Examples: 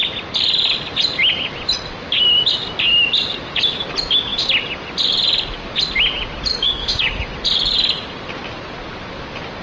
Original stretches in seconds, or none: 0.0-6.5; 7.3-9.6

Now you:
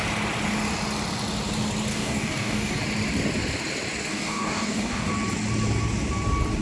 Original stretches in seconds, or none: 0.0-1.9; 2.8-4.1; 5.1-6.6